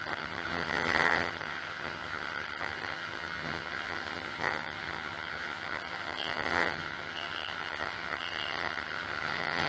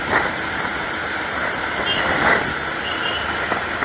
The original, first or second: second